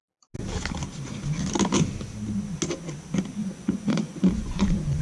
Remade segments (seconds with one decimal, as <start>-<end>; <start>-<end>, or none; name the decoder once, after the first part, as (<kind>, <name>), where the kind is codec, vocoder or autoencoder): 3.4-5.0 (vocoder, Vocos)